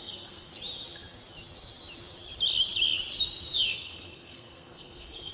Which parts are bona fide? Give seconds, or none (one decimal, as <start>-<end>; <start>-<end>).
0.5-3.7